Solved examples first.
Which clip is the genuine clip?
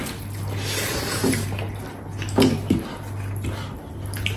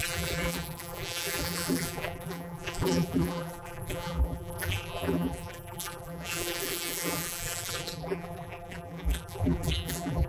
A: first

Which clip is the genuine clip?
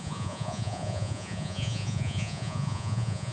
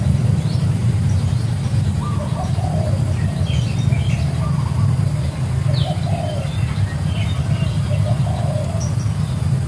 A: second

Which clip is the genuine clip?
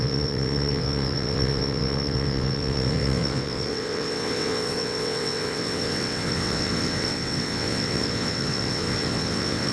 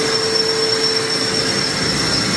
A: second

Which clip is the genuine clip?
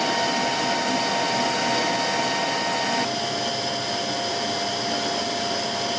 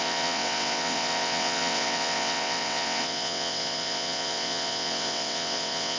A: first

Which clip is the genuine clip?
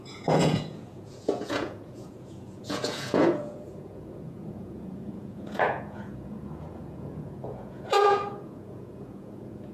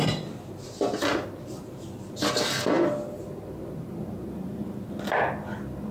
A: second